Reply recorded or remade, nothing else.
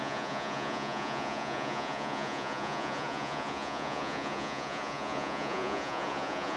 remade